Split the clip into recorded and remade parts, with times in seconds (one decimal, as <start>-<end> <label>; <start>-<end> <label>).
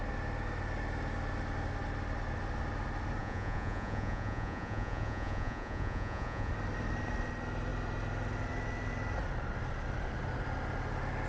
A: 0.0-3.2 recorded; 3.2-6.5 remade; 6.5-11.3 recorded